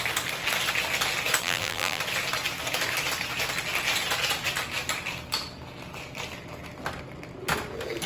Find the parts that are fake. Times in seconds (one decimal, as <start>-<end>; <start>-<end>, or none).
1.4-2.0